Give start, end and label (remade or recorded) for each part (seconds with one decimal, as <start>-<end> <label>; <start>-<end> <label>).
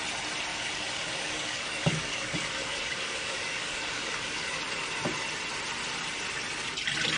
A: 0.0-0.5 recorded; 0.5-4.6 remade; 4.6-7.2 recorded